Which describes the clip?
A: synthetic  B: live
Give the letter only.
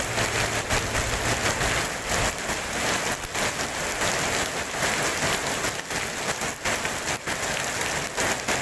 B